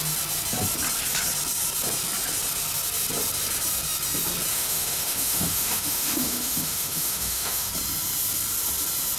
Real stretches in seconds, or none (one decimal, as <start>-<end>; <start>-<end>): 0.0-4.5; 7.7-9.2